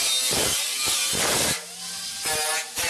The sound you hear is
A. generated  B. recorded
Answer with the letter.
B